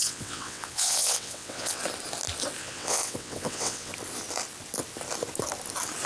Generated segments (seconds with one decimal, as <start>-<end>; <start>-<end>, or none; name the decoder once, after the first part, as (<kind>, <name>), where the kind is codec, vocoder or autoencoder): 0.0-1.8 (vocoder, WaveNeXt); 2.6-3.9